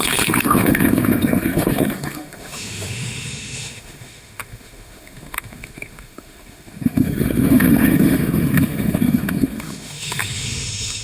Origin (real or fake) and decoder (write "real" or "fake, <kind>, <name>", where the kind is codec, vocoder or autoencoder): fake, autoencoder, DAC-VAE